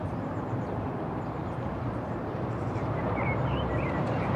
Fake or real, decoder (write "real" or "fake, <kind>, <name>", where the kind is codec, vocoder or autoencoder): fake, vocoder, BigVGAN v2